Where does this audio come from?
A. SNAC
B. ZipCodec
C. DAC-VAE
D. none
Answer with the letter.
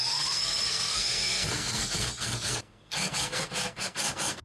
A